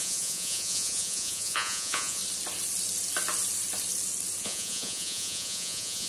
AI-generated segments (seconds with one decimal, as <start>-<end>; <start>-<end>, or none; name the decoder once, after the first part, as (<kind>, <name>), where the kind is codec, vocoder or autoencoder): 0.0-2.2 (vocoder, Vocos); 4.4-6.1